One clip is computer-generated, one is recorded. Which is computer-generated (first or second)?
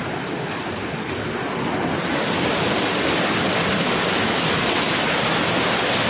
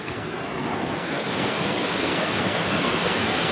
second